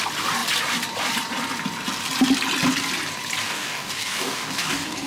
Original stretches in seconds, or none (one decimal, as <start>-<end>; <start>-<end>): 0.0-3.4